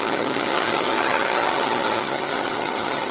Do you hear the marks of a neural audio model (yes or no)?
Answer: yes